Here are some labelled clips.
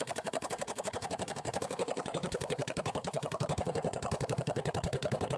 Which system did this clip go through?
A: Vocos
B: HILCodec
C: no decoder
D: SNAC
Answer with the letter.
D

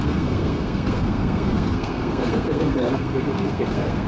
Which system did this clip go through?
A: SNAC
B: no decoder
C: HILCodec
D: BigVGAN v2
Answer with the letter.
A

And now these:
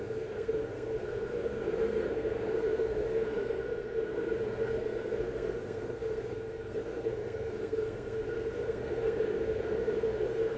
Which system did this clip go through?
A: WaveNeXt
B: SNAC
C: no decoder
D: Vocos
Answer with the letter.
B